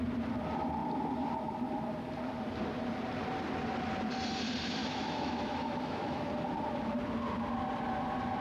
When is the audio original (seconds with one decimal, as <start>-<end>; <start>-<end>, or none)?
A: 0.0-4.8; 6.3-8.4